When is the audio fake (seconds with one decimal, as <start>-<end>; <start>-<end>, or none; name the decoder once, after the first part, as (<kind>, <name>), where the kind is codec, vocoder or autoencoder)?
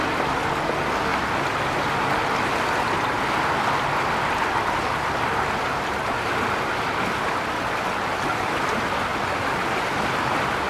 none